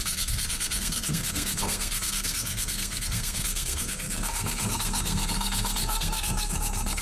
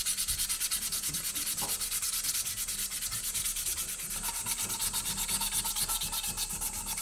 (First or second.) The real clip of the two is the second